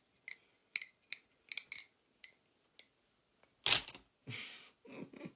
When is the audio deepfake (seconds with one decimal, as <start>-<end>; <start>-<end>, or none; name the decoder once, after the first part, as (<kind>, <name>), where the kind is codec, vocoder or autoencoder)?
none